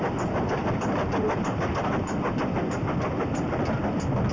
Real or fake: real